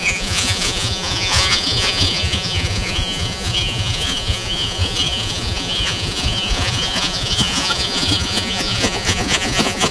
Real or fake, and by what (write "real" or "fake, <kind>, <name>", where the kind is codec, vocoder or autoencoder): fake, vocoder, Vocos